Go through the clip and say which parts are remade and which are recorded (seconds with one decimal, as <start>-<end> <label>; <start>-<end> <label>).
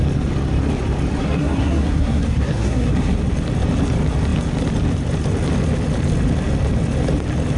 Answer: 0.0-1.2 recorded; 1.2-3.2 remade; 3.2-7.6 recorded